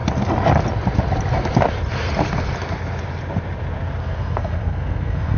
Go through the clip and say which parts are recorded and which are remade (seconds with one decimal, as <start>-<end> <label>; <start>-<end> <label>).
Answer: 0.0-4.0 recorded; 4.0-5.4 remade